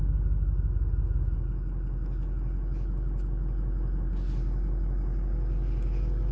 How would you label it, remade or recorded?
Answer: recorded